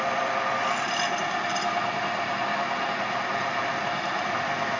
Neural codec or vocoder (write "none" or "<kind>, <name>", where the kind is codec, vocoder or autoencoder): none